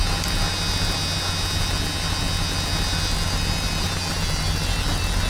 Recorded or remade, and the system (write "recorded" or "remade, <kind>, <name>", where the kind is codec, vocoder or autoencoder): recorded